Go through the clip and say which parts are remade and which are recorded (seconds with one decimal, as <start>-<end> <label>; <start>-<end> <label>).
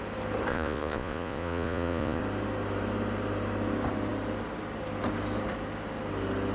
0.0-0.5 recorded; 0.5-2.2 remade; 2.2-6.5 recorded